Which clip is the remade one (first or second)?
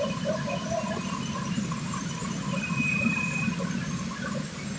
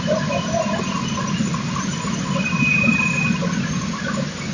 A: first